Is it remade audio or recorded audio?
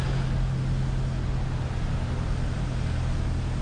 recorded